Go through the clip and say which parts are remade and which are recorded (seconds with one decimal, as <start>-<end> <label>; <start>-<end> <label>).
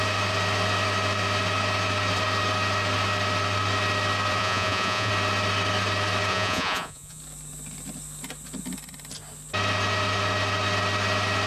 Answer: 0.0-4.4 recorded; 4.4-5.1 remade; 5.1-6.3 recorded; 6.3-7.2 remade; 7.2-11.5 recorded